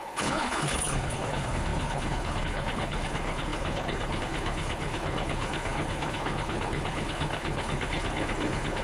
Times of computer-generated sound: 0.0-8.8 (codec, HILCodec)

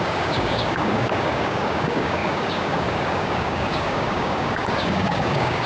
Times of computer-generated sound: 0.0-5.7 (codec, DAC)

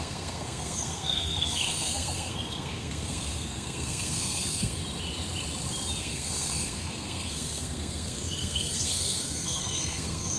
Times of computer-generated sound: 0.0-4.8 (codec, SNAC); 6.0-10.4

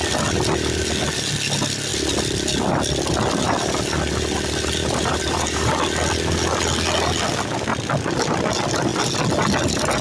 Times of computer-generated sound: 4.8-5.7 (vocoder, BigVGAN v2)

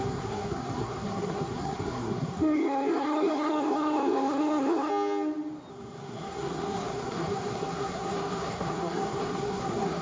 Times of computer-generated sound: 0.0-4.9 (codec, SNAC); 5.7-10.0

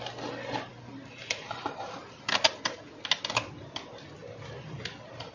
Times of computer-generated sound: none